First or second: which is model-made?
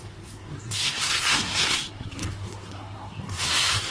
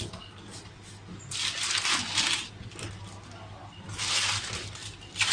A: first